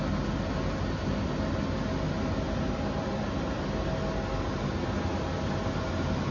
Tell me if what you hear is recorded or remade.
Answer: recorded